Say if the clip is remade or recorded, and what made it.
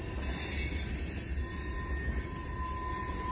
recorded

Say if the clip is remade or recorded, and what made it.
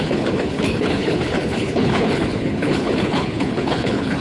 remade, codec, HILCodec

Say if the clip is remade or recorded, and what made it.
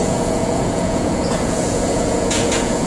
remade, vocoder, Vocos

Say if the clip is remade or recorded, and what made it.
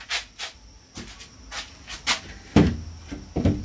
recorded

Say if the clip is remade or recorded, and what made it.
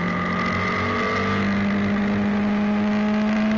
recorded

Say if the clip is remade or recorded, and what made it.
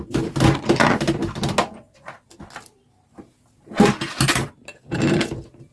recorded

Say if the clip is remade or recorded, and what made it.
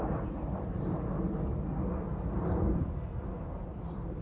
recorded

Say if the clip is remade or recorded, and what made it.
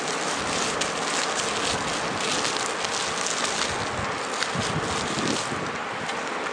recorded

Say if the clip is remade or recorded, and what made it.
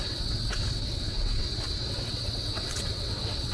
remade, vocoder, WaveNeXt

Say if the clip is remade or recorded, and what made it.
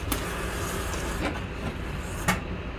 recorded